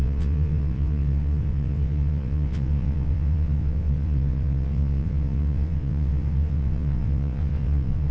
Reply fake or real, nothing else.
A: fake